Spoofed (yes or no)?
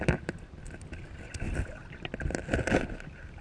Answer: no